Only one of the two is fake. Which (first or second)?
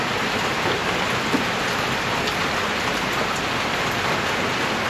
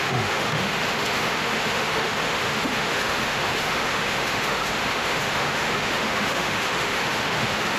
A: second